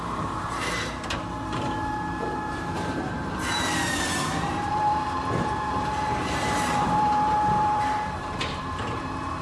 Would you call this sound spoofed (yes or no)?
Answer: yes